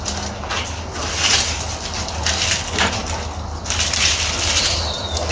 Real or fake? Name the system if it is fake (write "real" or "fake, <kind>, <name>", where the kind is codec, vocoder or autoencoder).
real